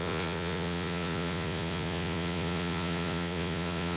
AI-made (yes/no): yes